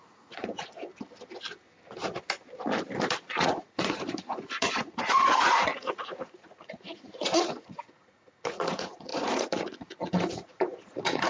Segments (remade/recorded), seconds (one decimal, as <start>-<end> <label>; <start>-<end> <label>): 0.0-0.9 remade; 0.9-3.1 recorded; 3.1-11.3 remade